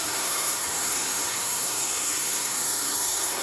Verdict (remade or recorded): remade